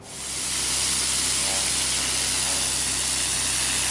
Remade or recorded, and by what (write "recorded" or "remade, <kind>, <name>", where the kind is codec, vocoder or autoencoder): recorded